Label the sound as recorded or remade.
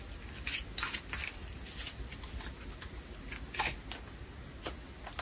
recorded